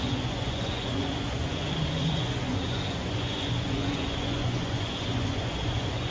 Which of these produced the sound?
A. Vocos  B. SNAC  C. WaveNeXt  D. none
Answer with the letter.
A